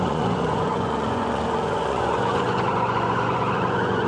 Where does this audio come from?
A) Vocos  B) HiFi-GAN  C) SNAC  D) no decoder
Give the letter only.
A